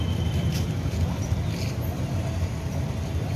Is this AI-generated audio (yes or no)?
no